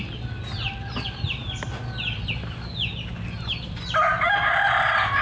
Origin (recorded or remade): recorded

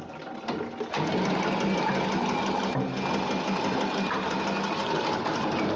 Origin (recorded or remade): recorded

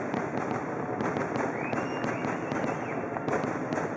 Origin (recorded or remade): recorded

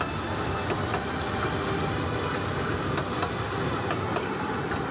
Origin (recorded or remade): recorded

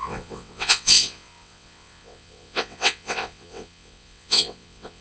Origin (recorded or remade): remade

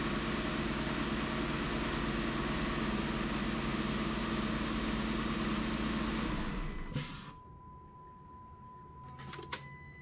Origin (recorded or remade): recorded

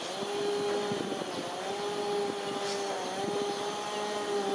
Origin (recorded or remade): recorded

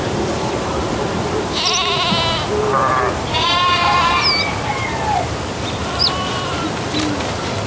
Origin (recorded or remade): recorded